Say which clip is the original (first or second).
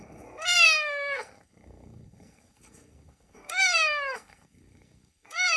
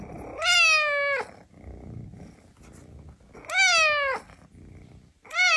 second